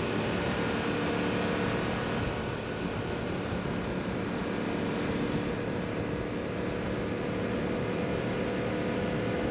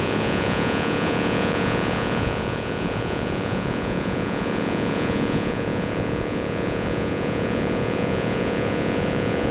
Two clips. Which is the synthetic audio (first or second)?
second